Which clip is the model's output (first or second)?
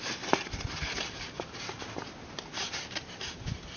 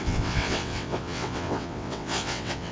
second